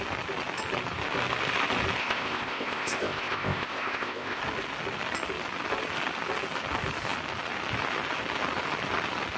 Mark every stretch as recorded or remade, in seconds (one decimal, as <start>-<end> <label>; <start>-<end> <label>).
0.0-2.0 recorded; 2.0-4.4 remade; 4.4-9.4 recorded

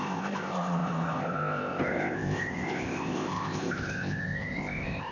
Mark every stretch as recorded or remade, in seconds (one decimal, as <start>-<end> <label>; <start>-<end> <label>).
0.0-5.1 remade

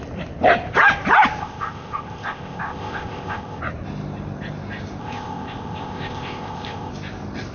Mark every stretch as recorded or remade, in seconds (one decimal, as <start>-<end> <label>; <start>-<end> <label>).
0.0-1.4 recorded; 1.4-3.6 remade; 3.6-5.0 recorded; 5.0-6.9 remade; 6.9-7.5 recorded

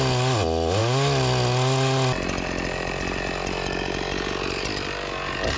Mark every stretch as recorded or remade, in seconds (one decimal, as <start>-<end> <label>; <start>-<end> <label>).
0.0-5.6 recorded

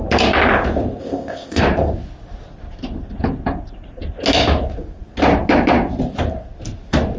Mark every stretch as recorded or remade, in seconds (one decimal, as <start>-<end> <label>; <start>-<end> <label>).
0.0-1.0 recorded; 1.0-1.6 remade; 1.6-7.2 recorded